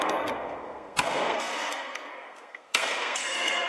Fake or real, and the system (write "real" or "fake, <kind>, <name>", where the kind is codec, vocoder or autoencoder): fake, codec, SNAC